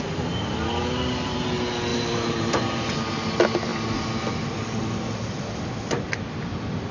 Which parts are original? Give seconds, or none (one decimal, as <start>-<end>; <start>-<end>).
0.0-1.9; 2.9-6.9